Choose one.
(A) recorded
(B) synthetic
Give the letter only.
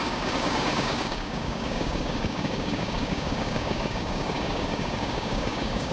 B